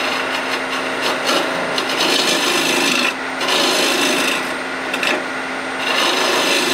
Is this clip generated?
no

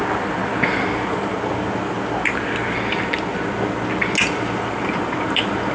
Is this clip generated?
no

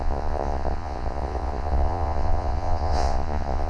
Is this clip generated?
yes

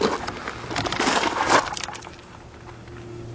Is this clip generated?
no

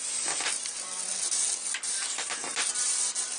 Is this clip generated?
no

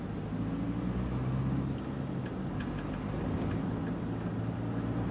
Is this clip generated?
no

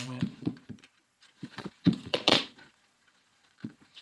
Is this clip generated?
yes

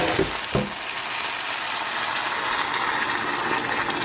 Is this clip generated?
no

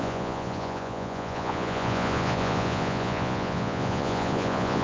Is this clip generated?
yes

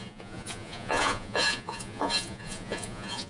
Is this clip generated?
yes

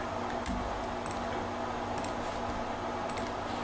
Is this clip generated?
no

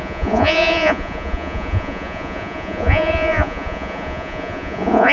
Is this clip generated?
yes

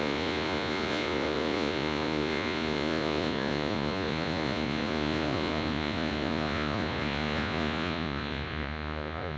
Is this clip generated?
yes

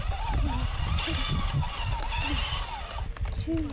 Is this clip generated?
no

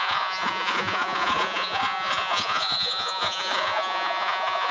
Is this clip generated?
yes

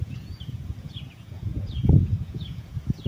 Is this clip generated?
yes